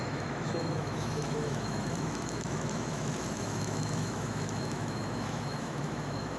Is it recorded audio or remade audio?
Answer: remade